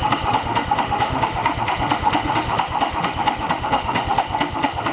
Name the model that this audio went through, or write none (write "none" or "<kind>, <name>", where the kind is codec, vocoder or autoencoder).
autoencoder, DAC-VAE